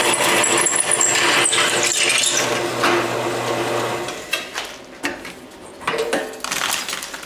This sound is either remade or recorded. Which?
recorded